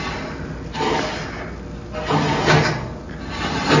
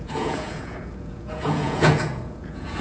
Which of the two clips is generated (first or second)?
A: second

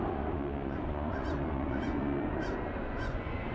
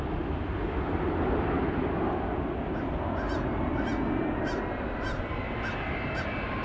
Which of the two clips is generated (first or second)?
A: first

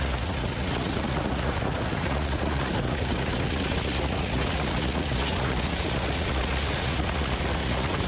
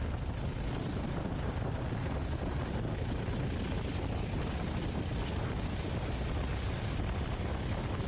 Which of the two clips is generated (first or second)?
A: first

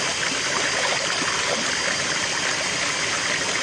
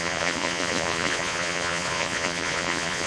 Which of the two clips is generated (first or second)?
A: second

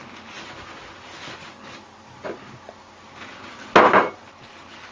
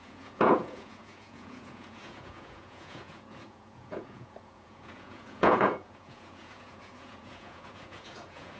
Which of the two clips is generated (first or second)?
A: second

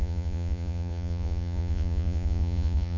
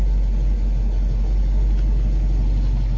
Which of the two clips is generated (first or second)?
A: first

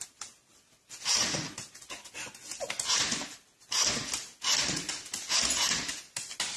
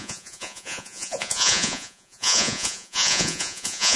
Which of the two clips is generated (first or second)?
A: second